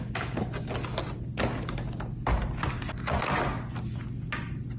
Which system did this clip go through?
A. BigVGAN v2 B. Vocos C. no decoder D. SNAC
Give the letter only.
C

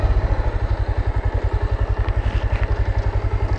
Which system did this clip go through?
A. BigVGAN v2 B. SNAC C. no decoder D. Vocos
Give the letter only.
C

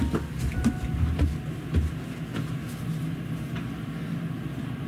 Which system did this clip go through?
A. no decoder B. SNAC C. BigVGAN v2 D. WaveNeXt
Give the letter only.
A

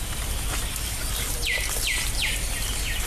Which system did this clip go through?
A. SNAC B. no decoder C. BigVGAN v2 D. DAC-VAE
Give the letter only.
B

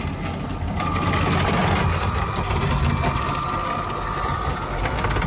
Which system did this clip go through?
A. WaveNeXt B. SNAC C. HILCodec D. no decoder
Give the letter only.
D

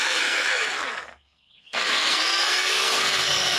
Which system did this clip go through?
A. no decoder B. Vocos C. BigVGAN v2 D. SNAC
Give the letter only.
D